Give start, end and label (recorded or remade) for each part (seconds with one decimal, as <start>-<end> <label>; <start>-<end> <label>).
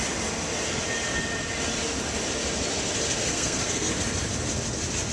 0.0-3.2 recorded; 3.2-3.9 remade; 3.9-5.1 recorded